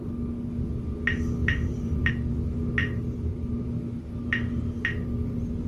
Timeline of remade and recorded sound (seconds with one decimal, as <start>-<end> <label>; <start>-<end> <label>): 0.0-1.4 recorded; 1.4-2.1 remade; 2.1-2.8 recorded; 2.8-3.7 remade; 3.7-5.7 recorded